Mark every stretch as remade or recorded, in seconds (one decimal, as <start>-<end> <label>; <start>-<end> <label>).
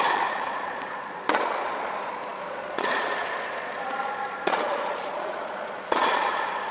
0.0-6.7 remade